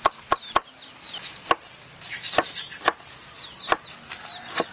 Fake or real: real